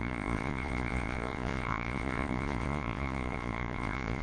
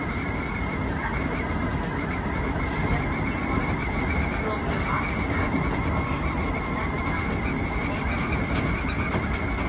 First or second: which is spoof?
first